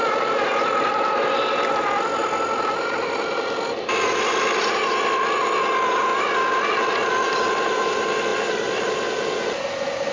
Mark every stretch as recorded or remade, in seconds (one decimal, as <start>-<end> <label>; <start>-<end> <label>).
0.0-10.1 recorded